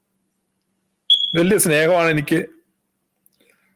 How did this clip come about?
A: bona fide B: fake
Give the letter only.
A